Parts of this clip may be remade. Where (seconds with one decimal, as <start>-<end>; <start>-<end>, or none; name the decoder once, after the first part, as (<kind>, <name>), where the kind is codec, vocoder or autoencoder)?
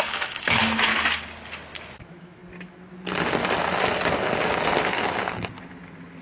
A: 0.0-0.9 (autoencoder, DAC-VAE); 2.0-2.4